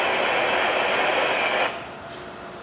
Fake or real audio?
real